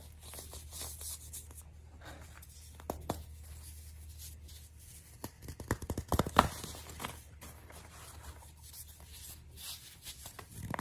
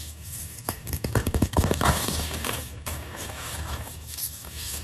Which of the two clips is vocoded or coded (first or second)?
second